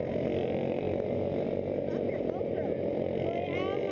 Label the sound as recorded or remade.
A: recorded